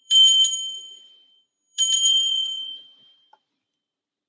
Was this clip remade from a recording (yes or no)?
yes